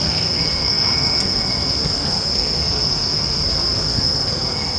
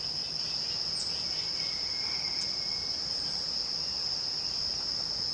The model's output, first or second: first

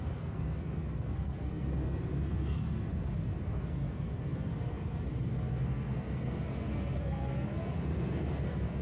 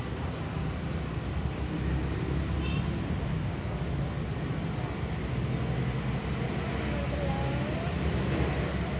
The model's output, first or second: first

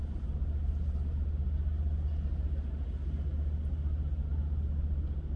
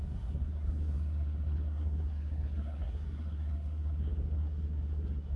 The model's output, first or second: second